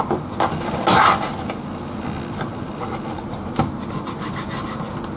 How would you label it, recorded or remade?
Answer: recorded